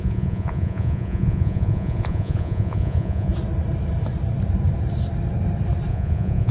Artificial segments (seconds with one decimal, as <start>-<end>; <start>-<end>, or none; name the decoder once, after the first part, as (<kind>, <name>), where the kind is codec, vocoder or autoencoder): 0.0-3.3 (vocoder, Vocos); 5.9-6.5